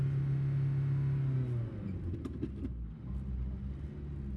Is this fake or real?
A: real